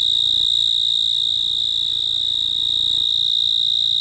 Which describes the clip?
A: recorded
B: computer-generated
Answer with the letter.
A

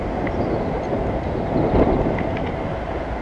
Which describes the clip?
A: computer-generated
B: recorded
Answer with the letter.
B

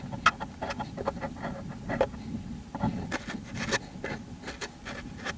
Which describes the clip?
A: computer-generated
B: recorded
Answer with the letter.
B